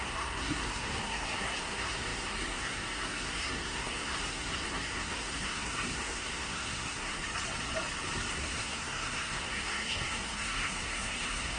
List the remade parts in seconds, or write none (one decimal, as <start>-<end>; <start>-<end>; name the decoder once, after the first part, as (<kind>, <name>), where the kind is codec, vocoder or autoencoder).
0.0-7.2 (codec, SNAC); 8.3-11.6